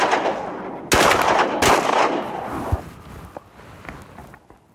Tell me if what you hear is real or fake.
real